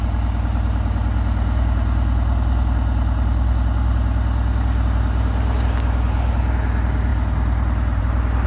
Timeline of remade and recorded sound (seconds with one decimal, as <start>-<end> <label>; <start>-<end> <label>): 0.0-8.5 recorded